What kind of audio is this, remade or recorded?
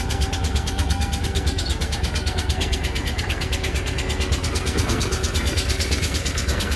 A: remade